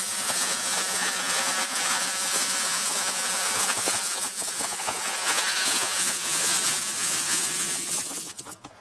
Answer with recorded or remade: remade